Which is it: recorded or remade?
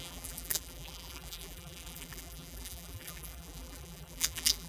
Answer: remade